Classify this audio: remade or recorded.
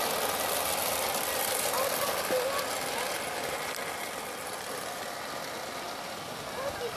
recorded